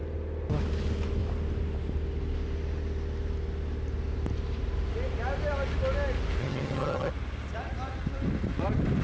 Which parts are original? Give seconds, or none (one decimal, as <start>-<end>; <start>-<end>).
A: 0.0-6.4; 7.1-9.0